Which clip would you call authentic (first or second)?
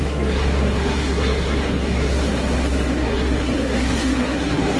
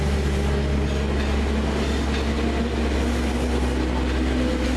second